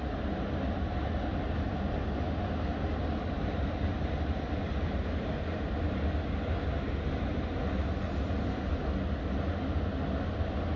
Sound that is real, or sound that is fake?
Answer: real